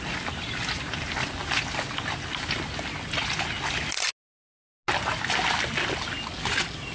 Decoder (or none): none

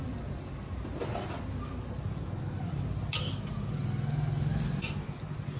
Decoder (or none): none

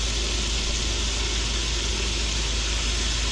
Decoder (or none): none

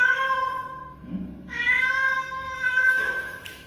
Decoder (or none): autoencoder, DAC-VAE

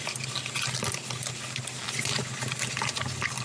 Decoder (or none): none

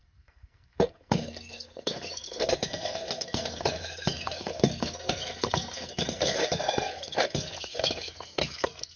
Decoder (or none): codec, SNAC